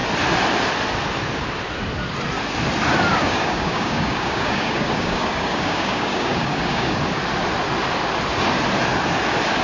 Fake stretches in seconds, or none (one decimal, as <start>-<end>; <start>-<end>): 3.1-7.0